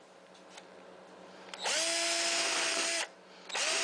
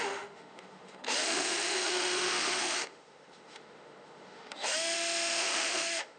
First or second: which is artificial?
second